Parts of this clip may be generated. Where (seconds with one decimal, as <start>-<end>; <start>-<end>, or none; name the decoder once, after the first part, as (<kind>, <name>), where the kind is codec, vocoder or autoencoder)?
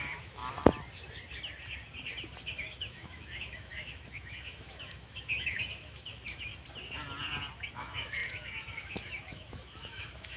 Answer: 0.0-0.4 (autoencoder, DAC-VAE); 2.4-6.5; 7.7-10.4